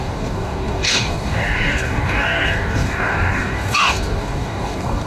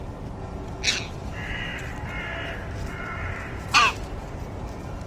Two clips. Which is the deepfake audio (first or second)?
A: first